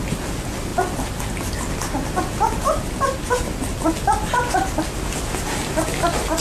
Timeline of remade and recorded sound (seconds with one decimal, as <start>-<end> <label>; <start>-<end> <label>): 0.0-6.4 recorded